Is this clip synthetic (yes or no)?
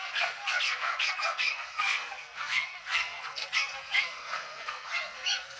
yes